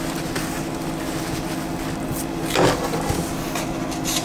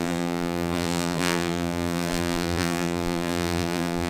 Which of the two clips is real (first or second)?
first